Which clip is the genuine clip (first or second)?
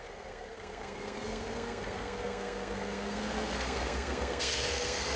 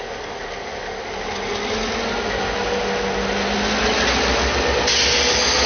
second